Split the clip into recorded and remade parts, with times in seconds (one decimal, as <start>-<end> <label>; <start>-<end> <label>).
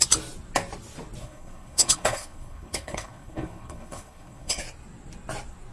0.0-1.2 recorded; 1.2-4.6 remade; 4.6-5.7 recorded